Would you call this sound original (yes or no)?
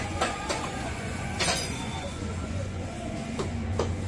no